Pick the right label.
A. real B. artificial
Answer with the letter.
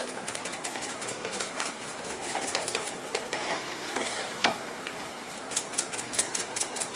B